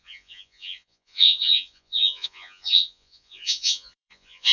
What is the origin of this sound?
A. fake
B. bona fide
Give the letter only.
A